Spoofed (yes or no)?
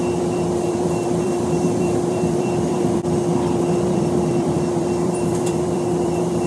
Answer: yes